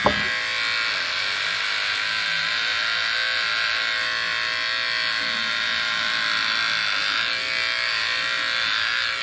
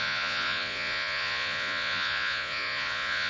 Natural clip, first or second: first